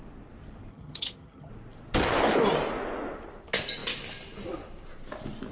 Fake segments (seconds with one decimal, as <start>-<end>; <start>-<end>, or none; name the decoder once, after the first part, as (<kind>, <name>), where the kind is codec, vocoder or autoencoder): 0.7-1.5 (vocoder, HiFi-GAN)